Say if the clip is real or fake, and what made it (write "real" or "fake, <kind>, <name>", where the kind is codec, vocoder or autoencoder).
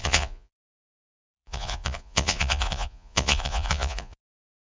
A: fake, vocoder, Vocos